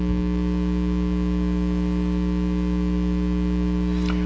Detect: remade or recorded recorded